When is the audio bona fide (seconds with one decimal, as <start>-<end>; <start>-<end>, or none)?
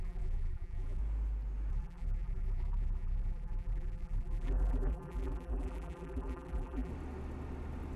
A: 1.0-1.7; 6.9-8.0